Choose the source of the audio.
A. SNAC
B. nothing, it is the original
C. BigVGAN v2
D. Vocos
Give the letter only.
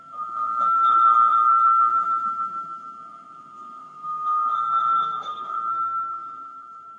A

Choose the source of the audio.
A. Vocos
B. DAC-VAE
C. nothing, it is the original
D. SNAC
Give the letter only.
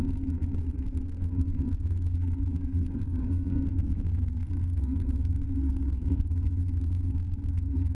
D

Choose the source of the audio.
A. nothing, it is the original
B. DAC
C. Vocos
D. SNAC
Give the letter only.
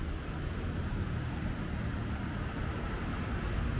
A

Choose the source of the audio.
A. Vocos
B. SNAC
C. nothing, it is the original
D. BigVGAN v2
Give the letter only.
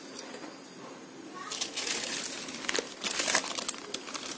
C